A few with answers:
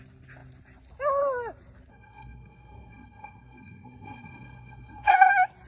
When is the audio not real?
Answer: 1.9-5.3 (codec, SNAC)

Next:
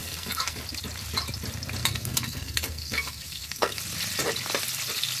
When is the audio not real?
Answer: 0.0-0.6 (codec, SNAC); 1.8-3.8

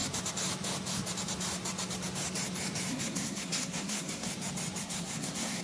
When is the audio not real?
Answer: 2.9-4.3 (codec, SNAC); 4.8-5.6

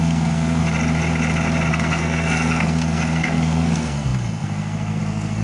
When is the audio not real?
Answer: 0.0-0.6 (codec, SNAC); 1.7-5.4

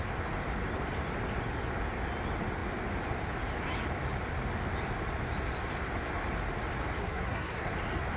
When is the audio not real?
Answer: 7.0-7.7 (codec, SNAC)

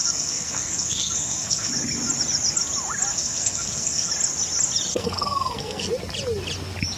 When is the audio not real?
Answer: 0.0-1.7 (codec, SNAC); 3.1-4.1; 4.9-5.9

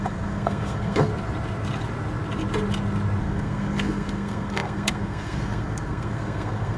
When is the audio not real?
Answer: 0.0-1.1 (codec, SNAC); 3.2-6.8

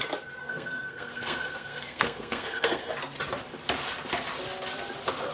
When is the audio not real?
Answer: 0.4-2.9 (codec, SNAC)